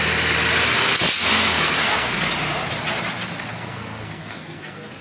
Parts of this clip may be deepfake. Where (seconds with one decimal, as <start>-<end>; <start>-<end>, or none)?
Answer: 1.3-2.3; 3.5-5.0

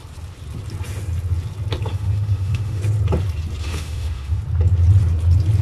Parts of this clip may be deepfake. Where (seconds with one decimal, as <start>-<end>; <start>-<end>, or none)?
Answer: 1.9-2.8; 3.6-4.4